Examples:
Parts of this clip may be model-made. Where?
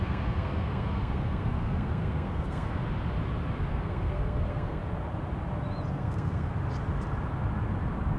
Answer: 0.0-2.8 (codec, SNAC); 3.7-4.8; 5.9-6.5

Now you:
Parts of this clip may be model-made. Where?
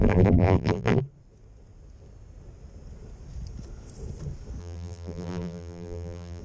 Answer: 0.0-1.0 (vocoder, BigVGAN v2); 4.6-6.4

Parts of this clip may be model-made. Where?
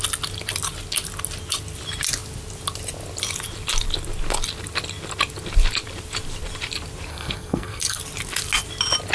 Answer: 7.1-8.0 (codec, SNAC)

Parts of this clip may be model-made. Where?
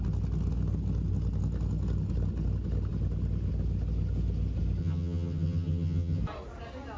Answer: 4.8-6.2 (vocoder, HiFi-GAN)